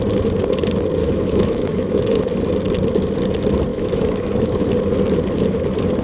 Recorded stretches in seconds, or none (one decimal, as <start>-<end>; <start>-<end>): 0.0-1.0; 2.2-3.7; 4.7-6.0